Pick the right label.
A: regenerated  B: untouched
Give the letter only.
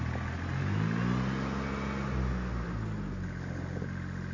B